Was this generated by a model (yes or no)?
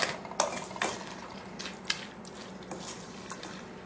no